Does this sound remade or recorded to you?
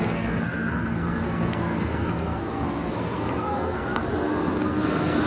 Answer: remade